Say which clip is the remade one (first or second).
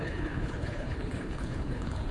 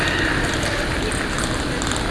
first